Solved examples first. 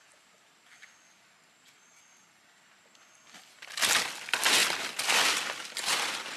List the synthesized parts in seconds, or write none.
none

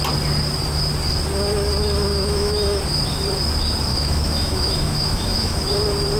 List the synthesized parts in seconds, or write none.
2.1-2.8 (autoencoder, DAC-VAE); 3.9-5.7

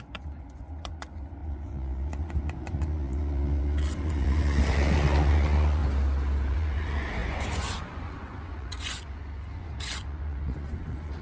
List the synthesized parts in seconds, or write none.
0.0-5.8 (vocoder, Vocos); 6.5-11.2

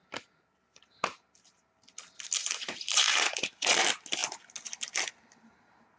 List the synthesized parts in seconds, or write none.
2.4-3.8 (vocoder, BigVGAN v2)